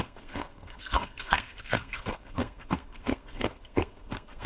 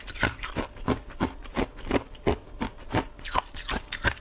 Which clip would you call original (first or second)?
second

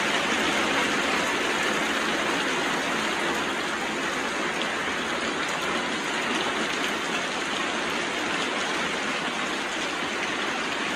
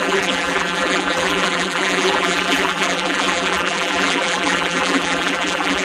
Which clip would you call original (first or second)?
first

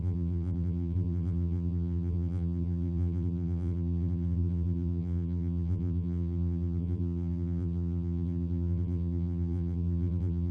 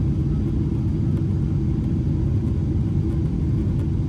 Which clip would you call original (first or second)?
second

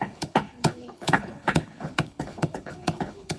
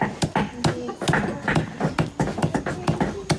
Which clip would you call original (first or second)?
second